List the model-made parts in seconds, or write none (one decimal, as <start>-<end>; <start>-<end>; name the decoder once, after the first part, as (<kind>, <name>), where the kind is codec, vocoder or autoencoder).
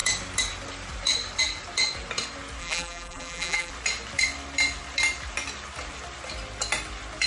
2.6-3.7 (vocoder, BigVGAN v2)